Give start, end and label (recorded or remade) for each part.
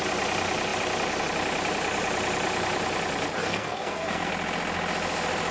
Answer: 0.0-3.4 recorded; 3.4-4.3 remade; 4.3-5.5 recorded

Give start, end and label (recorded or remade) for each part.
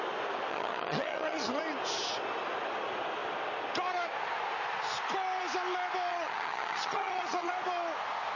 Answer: 0.0-0.5 recorded; 0.5-1.6 remade; 1.6-6.1 recorded; 6.1-7.5 remade; 7.5-8.3 recorded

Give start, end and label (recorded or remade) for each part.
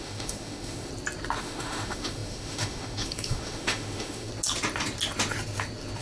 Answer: 0.0-0.9 remade; 0.9-1.4 recorded; 1.4-4.3 remade; 4.3-6.0 recorded